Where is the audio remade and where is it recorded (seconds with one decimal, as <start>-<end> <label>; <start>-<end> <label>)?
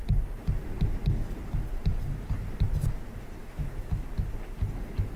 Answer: 0.0-3.4 recorded; 3.4-4.0 remade; 4.0-5.2 recorded